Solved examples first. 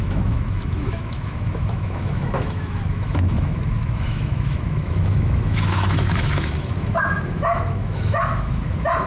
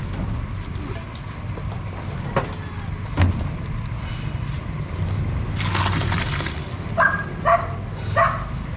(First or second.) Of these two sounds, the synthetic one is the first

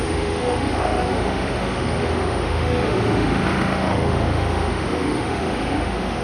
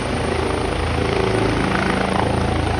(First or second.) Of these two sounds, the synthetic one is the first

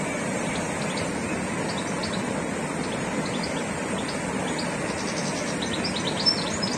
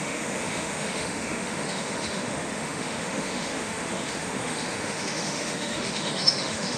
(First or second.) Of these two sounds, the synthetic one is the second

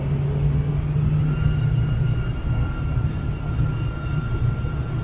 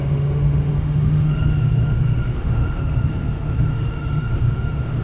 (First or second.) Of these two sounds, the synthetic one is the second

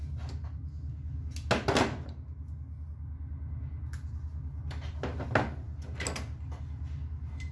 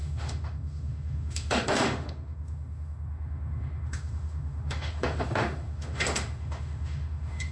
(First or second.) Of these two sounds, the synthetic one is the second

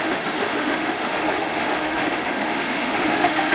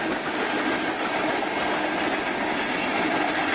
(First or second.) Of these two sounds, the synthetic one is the first